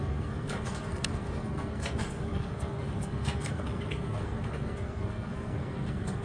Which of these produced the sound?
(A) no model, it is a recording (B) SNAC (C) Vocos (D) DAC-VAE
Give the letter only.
B